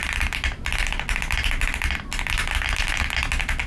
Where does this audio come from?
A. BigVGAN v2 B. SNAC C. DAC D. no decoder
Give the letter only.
D